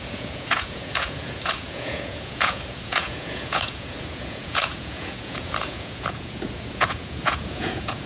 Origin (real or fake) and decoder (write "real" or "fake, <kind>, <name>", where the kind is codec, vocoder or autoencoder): fake, vocoder, Vocos